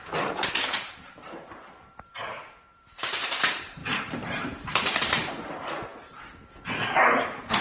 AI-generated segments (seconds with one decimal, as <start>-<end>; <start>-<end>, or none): 0.5-5.9

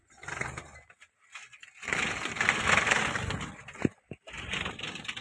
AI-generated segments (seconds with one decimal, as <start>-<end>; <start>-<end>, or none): none

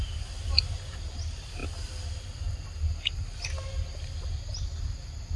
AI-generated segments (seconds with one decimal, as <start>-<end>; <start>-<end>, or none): none

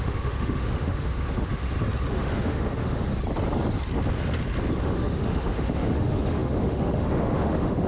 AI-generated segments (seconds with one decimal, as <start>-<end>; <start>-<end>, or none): 0.0-1.6; 2.1-3.1; 4.8-7.9

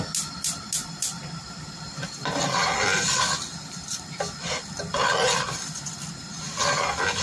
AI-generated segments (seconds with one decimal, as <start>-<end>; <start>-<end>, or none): none

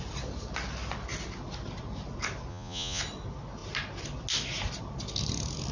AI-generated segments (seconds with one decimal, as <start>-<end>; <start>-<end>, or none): 2.5-3.0

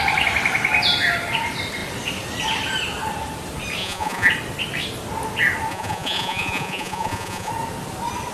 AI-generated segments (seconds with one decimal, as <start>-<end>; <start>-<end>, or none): 3.8-4.3; 5.7-7.5